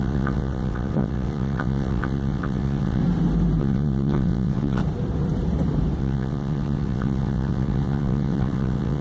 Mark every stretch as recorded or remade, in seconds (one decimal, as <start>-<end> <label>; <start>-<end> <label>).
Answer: 0.0-3.0 remade; 3.0-3.6 recorded; 3.6-4.8 remade; 4.8-6.0 recorded; 6.0-9.0 remade